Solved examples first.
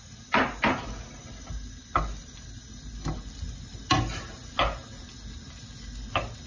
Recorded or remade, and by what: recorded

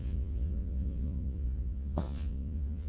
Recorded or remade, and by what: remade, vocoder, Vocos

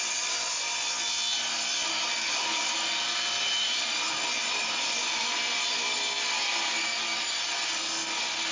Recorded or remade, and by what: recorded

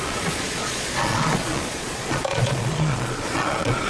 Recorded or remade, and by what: remade, vocoder, Vocos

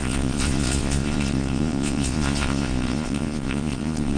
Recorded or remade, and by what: remade, vocoder, Vocos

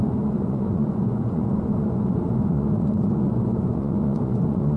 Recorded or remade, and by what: remade, vocoder, Vocos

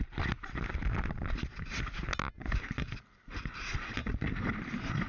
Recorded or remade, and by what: recorded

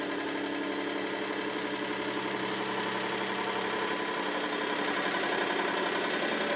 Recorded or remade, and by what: recorded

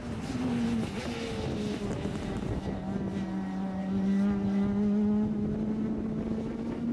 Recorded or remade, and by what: recorded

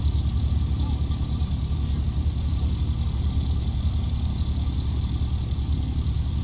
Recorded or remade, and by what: recorded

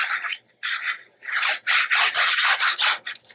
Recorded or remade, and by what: recorded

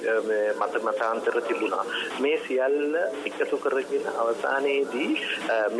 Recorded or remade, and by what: recorded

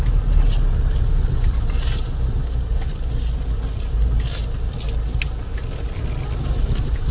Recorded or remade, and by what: recorded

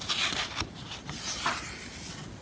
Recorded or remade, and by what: recorded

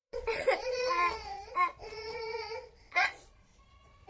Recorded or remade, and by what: remade, vocoder, Vocos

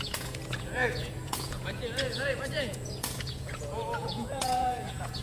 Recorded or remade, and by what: remade, vocoder, Vocos